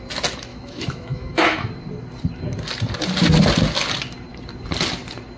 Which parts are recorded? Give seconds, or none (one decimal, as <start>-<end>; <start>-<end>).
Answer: 0.0-0.5; 1.7-5.4